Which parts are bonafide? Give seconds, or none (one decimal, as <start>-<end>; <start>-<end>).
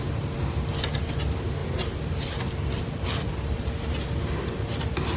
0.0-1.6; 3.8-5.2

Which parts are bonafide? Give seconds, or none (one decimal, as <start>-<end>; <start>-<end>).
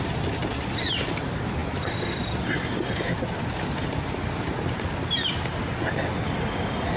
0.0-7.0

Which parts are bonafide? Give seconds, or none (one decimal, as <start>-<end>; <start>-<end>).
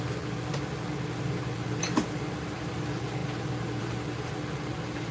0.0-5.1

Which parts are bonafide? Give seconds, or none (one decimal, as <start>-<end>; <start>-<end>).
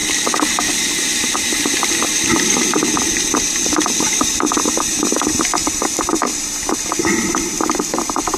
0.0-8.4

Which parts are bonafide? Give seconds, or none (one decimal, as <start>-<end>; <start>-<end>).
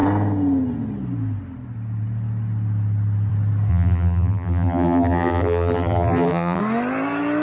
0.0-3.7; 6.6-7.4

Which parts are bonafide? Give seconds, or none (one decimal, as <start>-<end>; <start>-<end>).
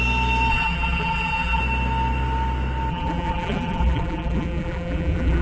0.0-0.5; 1.6-2.9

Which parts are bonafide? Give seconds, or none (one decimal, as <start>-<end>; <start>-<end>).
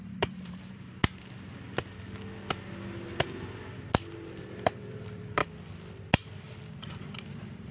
1.0-4.4; 5.4-6.9